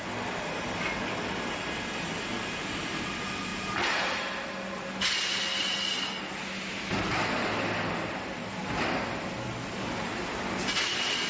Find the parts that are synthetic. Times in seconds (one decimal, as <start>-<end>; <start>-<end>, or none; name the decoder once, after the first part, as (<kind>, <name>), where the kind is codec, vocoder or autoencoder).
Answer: none